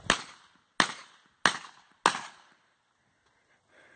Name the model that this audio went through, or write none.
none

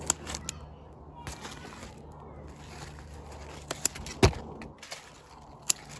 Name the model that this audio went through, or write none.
none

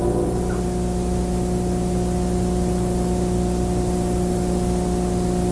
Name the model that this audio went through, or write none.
none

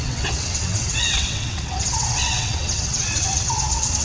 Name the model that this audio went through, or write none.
vocoder, WaveNeXt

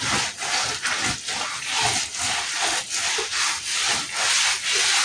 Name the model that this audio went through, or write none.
none